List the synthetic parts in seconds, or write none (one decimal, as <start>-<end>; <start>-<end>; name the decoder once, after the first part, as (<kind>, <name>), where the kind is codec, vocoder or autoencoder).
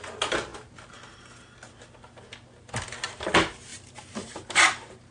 3.7-5.1 (vocoder, BigVGAN v2)